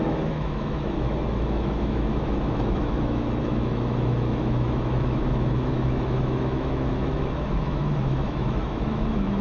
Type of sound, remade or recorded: remade